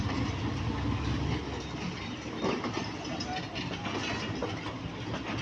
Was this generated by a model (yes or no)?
no